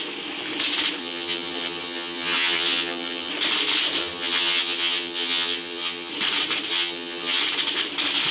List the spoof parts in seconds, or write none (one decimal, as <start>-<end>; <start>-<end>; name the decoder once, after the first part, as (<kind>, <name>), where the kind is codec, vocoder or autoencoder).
1.0-3.3 (vocoder, HiFi-GAN); 4.0-6.1; 6.7-7.4